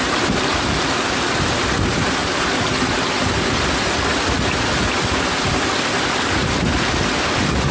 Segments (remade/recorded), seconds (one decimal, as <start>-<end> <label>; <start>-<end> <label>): 0.0-7.7 recorded